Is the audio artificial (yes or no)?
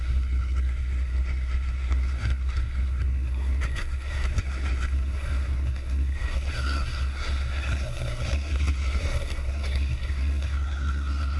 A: yes